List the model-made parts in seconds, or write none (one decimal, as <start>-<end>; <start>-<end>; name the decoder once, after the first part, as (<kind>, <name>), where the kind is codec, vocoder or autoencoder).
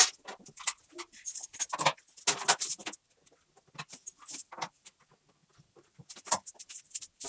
5.4-6.3 (vocoder, BigVGAN v2)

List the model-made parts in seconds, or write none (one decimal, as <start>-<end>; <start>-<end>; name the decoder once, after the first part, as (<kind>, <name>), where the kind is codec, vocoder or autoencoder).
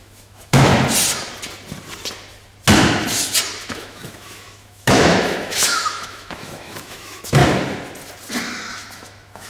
0.0-0.7 (autoencoder, DAC-VAE); 3.6-7.4; 8.7-9.5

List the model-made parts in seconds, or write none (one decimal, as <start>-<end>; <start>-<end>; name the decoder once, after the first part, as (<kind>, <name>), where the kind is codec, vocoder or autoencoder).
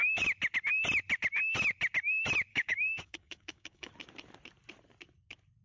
2.5-3.9 (codec, DAC)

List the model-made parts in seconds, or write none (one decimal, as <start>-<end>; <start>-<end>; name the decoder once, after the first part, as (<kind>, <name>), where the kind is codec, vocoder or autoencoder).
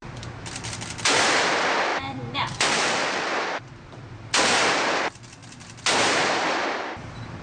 0.0-7.4 (vocoder, BigVGAN v2)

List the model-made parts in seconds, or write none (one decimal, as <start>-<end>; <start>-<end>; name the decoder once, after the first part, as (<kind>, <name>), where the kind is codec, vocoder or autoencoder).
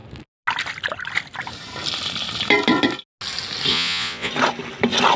3.7-4.3 (vocoder, Vocos)